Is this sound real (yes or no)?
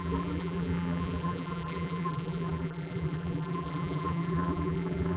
no